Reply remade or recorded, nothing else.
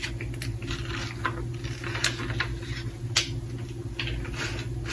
recorded